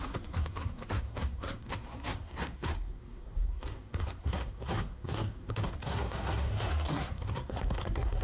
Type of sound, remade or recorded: remade